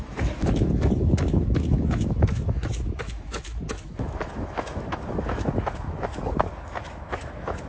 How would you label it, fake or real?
fake